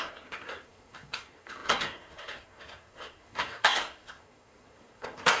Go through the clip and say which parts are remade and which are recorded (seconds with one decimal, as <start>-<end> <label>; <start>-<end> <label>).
0.0-5.4 remade